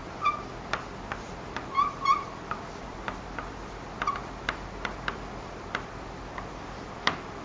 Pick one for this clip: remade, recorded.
recorded